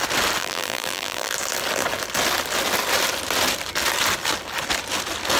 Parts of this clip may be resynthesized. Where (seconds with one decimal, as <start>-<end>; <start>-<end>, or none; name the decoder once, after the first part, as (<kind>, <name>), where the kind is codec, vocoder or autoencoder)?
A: 0.4-1.3 (vocoder, BigVGAN v2)